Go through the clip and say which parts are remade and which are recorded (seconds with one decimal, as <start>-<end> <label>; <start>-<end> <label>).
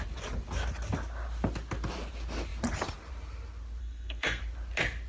0.0-3.8 recorded; 3.8-4.4 remade; 4.4-5.1 recorded